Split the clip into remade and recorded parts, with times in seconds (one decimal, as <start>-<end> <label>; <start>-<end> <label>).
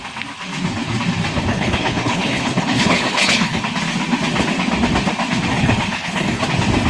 0.0-1.5 recorded; 1.5-3.6 remade; 3.6-5.5 recorded; 5.5-6.4 remade; 6.4-6.9 recorded